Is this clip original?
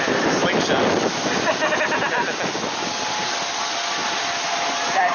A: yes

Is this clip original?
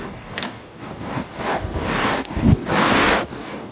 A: no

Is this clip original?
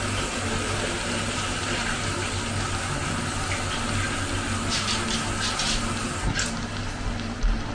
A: yes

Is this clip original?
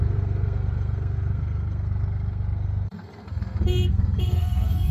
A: no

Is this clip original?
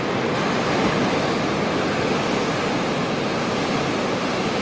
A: yes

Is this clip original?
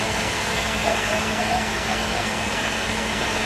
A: no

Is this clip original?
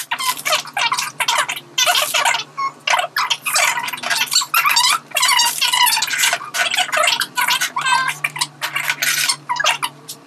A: yes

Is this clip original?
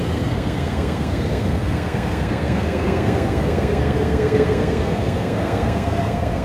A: no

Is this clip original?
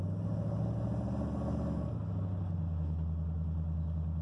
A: yes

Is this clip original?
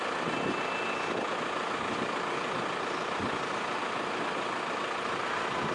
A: yes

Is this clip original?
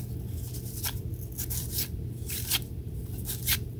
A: yes